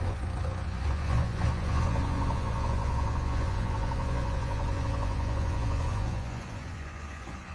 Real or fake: fake